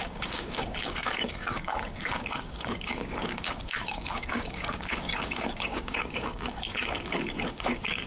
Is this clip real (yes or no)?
no